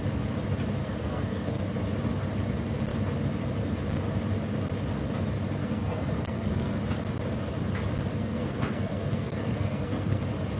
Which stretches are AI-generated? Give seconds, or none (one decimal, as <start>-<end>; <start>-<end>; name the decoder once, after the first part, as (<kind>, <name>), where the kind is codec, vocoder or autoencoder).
0.8-1.6 (codec, SNAC); 5.6-6.8; 8.1-10.2